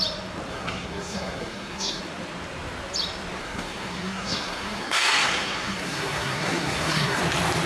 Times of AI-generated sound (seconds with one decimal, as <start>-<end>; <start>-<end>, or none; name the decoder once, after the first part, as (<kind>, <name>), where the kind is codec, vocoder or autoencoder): 0.5-2.0 (codec, SNAC); 3.4-7.2